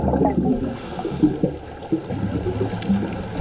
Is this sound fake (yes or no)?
no